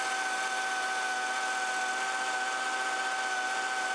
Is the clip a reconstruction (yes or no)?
no